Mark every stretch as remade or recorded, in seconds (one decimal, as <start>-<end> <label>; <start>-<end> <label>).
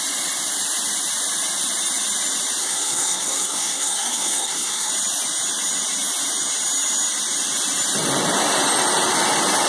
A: 0.0-2.6 recorded; 2.6-4.9 remade; 4.9-9.7 recorded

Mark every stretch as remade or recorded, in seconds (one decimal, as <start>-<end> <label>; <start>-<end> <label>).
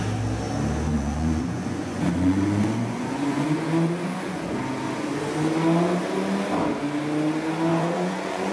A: 0.0-0.9 recorded; 0.9-4.6 remade; 4.6-7.7 recorded; 7.7-8.5 remade